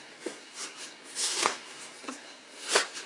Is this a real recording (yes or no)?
no